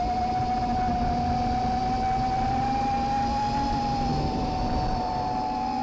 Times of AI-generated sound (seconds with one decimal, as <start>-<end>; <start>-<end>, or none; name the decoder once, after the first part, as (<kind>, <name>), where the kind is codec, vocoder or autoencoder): none